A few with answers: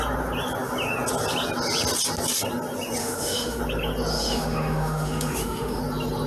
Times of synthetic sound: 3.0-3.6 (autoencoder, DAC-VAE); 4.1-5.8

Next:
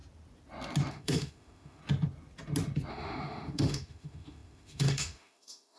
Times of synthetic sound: 0.9-1.8 (autoencoder, DAC-VAE); 2.9-5.8

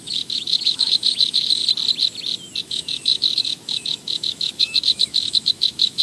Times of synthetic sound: 0.0-1.6 (autoencoder, DAC-VAE); 2.6-6.0